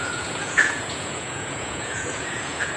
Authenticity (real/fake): fake